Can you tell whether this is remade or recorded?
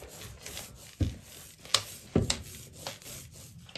recorded